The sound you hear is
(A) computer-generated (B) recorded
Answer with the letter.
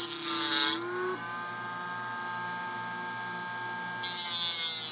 B